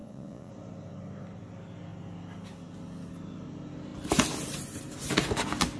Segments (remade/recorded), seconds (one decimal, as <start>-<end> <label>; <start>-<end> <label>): 0.0-0.5 remade; 0.5-5.8 recorded